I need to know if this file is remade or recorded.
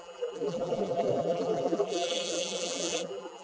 remade